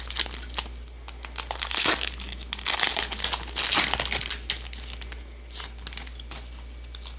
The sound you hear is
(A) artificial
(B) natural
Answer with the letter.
B